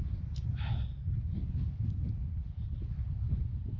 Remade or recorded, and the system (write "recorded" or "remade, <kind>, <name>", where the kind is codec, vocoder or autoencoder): recorded